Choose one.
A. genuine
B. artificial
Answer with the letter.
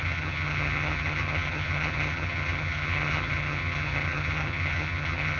B